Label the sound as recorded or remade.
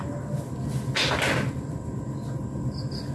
recorded